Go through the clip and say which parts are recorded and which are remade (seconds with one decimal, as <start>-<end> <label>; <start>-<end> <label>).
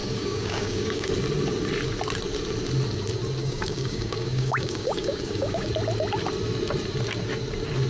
0.0-1.1 remade; 1.1-3.4 recorded; 3.4-5.7 remade; 5.7-7.9 recorded